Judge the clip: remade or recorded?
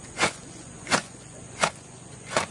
remade